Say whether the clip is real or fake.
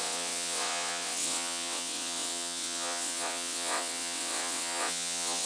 fake